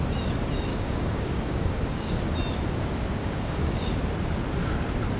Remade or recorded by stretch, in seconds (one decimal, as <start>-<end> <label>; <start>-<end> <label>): 0.0-0.7 recorded; 0.7-2.1 remade; 2.1-3.2 recorded; 3.2-3.9 remade; 3.9-5.2 recorded